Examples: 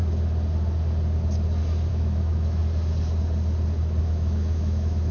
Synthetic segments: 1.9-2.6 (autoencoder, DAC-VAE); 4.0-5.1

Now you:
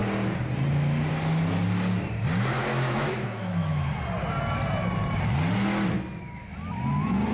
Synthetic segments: 2.6-3.9 (autoencoder, DAC-VAE)

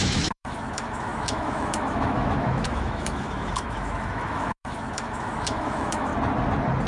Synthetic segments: 0.0-6.1 (autoencoder, DAC-VAE)

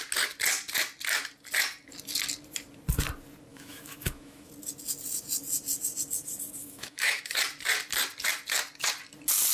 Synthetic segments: 3.5-4.5 (autoencoder, DAC-VAE); 6.6-7.2

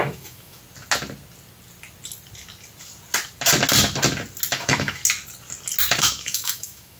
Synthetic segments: 0.0-0.6 (autoencoder, DAC-VAE); 4.6-5.0; 6.0-7.0